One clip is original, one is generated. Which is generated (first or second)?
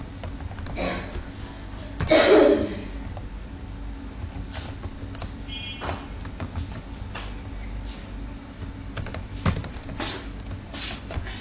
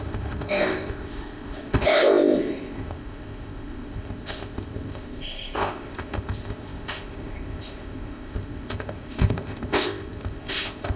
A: second